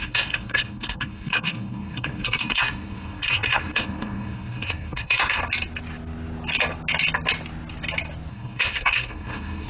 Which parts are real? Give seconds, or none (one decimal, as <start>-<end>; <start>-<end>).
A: 5.4-8.3